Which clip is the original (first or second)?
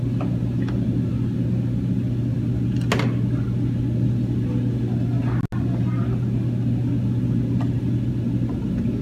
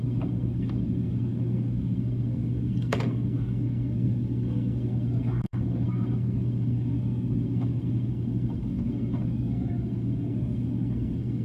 first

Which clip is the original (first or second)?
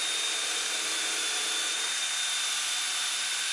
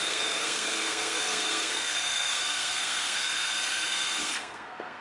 first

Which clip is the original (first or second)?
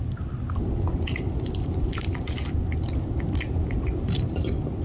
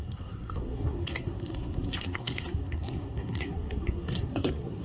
first